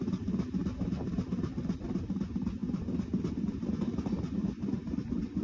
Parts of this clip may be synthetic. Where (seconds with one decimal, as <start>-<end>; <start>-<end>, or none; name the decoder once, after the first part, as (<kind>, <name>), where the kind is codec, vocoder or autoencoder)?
none